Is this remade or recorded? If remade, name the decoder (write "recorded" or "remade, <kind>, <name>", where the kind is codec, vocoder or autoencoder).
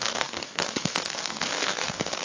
remade, codec, SNAC